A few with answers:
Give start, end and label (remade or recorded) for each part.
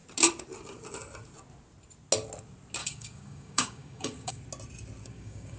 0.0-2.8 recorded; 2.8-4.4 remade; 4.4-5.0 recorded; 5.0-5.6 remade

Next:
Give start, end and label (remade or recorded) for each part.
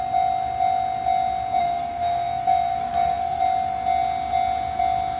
0.0-1.6 recorded; 1.6-3.4 remade; 3.4-5.2 recorded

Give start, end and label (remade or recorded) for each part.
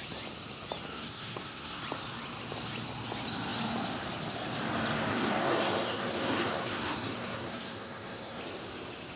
0.0-0.9 recorded; 0.9-1.8 remade; 1.8-5.1 recorded; 5.1-8.4 remade; 8.4-9.2 recorded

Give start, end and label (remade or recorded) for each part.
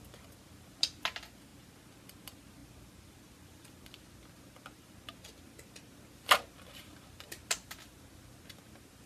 0.0-9.1 recorded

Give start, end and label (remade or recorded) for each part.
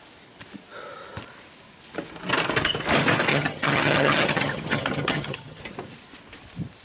0.0-3.3 recorded; 3.3-5.6 remade; 5.6-6.8 recorded